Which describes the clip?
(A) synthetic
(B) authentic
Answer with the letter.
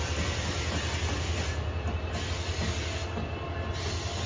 B